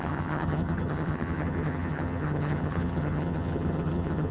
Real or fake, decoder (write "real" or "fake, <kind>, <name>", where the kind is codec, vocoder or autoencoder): fake, vocoder, HiFi-GAN